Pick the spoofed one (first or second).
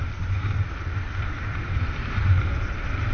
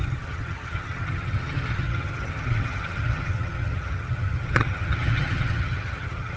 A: second